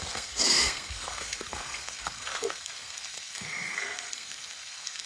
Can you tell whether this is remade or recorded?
remade